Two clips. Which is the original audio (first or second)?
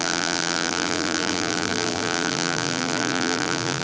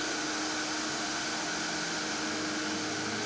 second